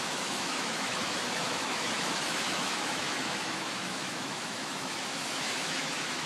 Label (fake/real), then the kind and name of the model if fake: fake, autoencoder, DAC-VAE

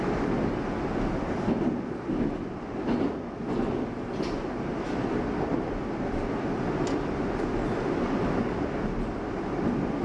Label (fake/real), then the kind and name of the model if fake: real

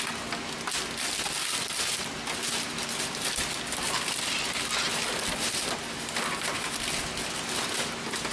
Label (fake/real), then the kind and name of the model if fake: real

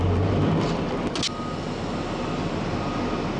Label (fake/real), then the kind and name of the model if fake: real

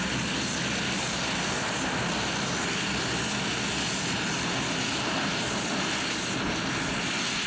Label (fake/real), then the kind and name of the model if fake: real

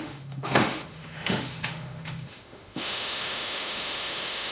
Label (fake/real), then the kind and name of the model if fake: fake, autoencoder, DAC-VAE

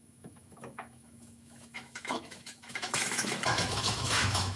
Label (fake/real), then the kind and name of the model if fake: fake, autoencoder, DAC-VAE